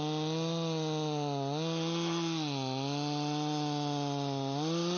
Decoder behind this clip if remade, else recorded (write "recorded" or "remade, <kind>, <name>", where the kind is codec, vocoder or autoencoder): recorded